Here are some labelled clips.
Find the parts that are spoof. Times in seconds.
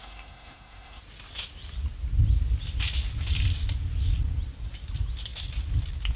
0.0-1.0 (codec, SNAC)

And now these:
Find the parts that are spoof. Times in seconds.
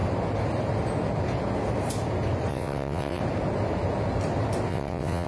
2.5-3.2 (vocoder, WaveNeXt); 4.7-5.3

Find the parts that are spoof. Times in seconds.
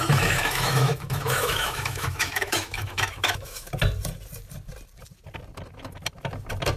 0.0-3.7 (autoencoder, DAC-VAE)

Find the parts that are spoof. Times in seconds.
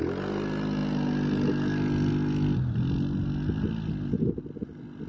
none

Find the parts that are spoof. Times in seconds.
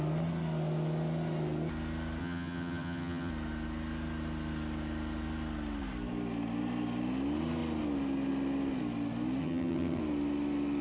2.2-3.3 (vocoder, HiFi-GAN); 9.4-10.0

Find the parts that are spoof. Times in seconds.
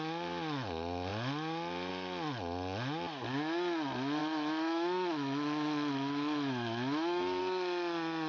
4.2-7.4 (autoencoder, DAC-VAE)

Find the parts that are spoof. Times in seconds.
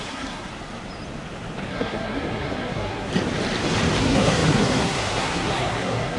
0.0-0.5 (codec, SNAC); 1.7-3.1; 4.0-6.2